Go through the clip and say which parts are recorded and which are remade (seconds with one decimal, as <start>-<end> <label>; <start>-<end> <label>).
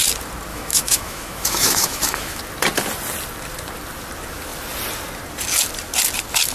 0.0-0.5 recorded; 0.5-2.4 remade; 2.4-6.5 recorded